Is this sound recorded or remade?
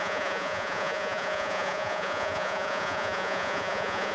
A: remade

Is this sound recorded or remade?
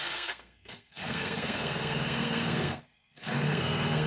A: remade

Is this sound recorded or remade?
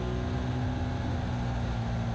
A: recorded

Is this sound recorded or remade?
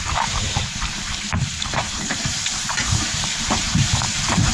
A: remade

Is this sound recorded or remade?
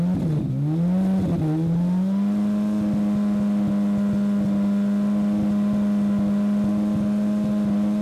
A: recorded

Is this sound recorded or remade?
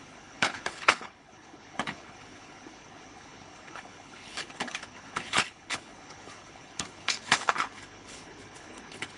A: remade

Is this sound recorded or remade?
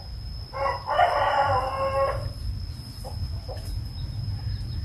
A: recorded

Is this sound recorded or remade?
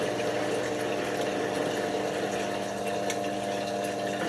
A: recorded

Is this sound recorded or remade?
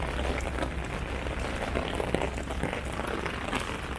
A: recorded